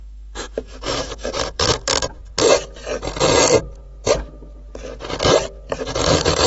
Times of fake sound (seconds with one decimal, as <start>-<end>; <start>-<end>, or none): 0.0-1.9; 5.8-6.5